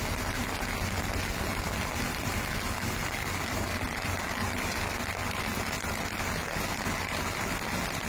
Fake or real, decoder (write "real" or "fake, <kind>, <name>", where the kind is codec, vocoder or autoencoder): real